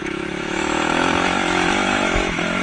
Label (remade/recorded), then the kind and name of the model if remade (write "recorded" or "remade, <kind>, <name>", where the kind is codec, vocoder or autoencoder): remade, autoencoder, DAC-VAE